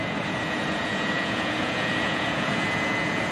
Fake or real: fake